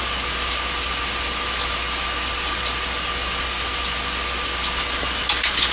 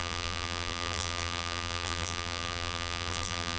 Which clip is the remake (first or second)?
second